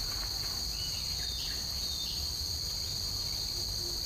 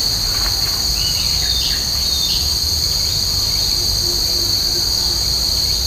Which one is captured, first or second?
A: second